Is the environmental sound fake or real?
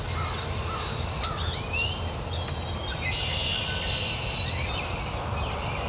real